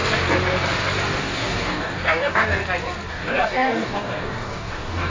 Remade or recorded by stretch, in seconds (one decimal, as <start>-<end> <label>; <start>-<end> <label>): 0.0-1.2 recorded; 1.2-2.6 remade; 2.6-3.1 recorded; 3.1-5.1 remade